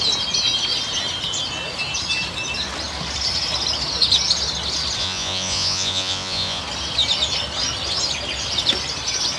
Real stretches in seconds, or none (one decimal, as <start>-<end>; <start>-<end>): 0.0-5.0; 6.6-9.4